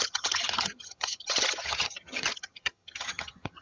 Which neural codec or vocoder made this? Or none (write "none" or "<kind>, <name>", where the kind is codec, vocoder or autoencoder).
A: vocoder, HiFi-GAN